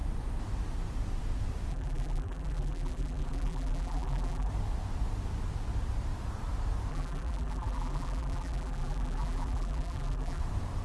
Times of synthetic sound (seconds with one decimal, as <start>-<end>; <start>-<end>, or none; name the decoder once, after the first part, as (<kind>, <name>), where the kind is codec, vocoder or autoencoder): 1.7-4.5 (vocoder, BigVGAN v2); 6.9-10.4